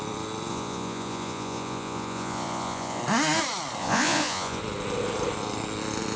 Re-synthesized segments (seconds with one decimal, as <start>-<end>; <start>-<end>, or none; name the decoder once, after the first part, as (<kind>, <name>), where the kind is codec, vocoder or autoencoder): 0.5-3.0 (vocoder, Vocos); 3.8-4.6